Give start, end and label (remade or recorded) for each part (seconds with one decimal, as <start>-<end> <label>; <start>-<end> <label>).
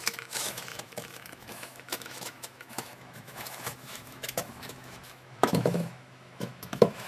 0.0-7.1 remade